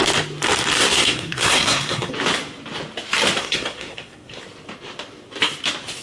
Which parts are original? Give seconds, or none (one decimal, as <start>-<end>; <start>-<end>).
0.0-0.8; 2.1-3.4; 4.4-6.0